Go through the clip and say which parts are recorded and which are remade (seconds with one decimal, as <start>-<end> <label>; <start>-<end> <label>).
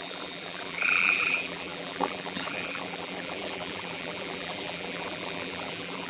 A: 0.0-6.1 remade